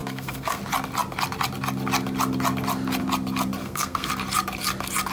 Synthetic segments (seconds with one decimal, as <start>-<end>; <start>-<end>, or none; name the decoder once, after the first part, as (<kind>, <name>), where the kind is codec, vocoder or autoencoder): 0.0-0.6 (codec, SNAC); 3.6-4.1